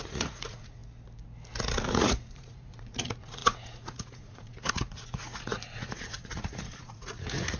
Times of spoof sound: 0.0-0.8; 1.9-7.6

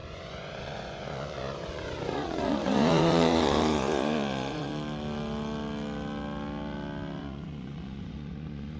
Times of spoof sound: 0.0-4.7; 7.2-8.8

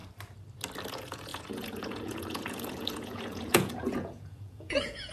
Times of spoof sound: 0.9-5.1